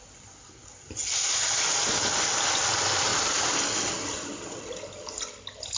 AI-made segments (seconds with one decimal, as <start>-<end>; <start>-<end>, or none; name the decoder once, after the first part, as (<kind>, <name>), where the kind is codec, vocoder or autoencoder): none